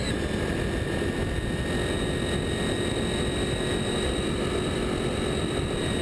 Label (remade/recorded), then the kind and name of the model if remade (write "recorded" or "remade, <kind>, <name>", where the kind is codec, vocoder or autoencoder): recorded